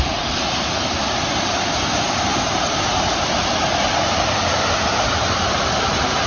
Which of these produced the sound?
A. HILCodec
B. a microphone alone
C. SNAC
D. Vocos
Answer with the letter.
B